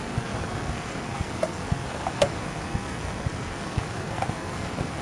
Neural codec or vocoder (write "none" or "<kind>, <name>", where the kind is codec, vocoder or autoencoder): codec, SNAC